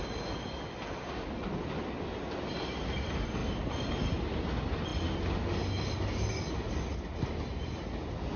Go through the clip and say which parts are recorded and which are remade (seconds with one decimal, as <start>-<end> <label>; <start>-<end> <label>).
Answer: 0.0-8.4 recorded